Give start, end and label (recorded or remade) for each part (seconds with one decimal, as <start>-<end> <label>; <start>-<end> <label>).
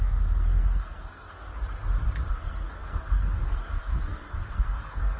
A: 0.0-1.5 remade; 1.5-2.3 recorded; 2.3-5.2 remade